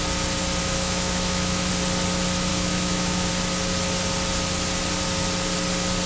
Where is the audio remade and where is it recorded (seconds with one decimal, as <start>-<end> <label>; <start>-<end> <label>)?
0.0-0.6 recorded; 0.6-1.7 remade; 1.7-2.5 recorded; 2.5-3.3 remade; 3.3-6.1 recorded